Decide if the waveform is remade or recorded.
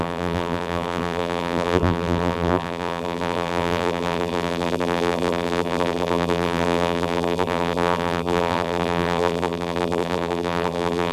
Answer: remade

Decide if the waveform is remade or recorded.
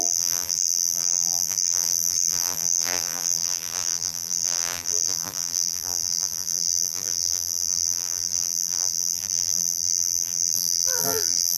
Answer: remade